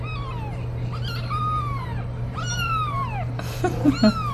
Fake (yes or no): no